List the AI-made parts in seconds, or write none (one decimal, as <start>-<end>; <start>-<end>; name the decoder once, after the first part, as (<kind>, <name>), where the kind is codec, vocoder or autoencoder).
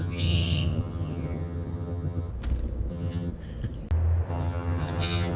0.0-2.3 (vocoder, HiFi-GAN); 2.9-3.3; 4.3-5.4